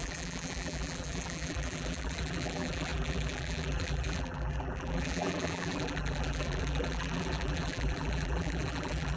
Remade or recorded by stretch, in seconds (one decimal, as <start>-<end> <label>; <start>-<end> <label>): 0.0-9.2 remade